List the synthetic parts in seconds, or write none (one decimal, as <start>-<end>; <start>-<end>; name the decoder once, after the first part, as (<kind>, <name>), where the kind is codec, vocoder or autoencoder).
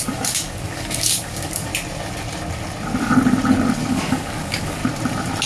0.0-1.7 (codec, DAC); 3.9-4.8